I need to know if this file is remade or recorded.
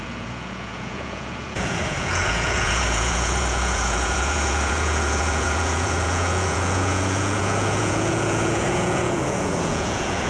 remade